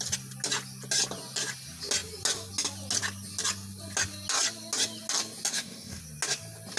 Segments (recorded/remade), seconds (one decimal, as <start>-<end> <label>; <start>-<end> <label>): 0.0-5.5 recorded; 5.5-6.0 remade; 6.0-6.8 recorded